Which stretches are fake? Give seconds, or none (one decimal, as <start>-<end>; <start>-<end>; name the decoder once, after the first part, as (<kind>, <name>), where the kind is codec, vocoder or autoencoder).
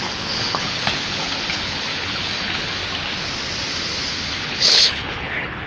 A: 0.0-2.8 (codec, HILCodec); 4.1-5.7